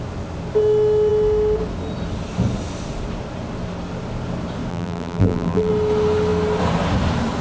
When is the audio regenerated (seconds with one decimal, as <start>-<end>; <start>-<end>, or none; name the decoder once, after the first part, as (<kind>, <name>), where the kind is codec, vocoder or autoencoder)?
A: 4.7-5.7 (vocoder, BigVGAN v2)